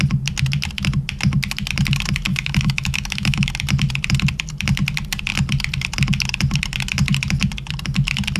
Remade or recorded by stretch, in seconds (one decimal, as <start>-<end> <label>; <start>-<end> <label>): 0.0-2.3 recorded; 2.3-3.5 remade; 3.5-8.4 recorded